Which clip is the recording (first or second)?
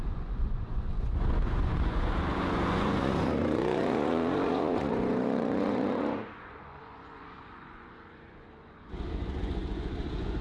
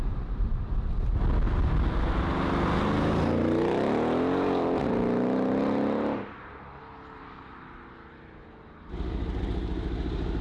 second